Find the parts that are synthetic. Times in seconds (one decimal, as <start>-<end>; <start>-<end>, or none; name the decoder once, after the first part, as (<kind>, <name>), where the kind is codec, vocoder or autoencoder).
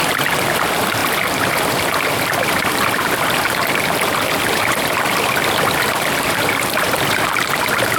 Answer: none